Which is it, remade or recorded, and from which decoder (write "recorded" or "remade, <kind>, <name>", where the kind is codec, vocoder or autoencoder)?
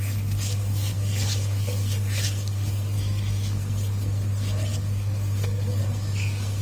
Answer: remade, codec, SNAC